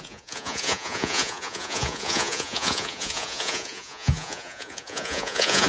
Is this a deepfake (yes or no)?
yes